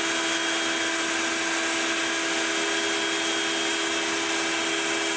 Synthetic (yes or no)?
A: no